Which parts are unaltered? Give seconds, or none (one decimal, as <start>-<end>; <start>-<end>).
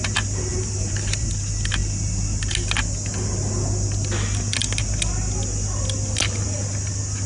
0.0-0.5; 1.3-7.3